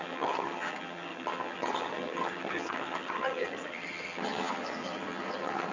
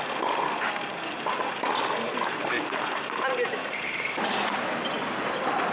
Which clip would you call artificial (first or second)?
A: first